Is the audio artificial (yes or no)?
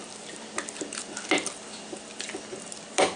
no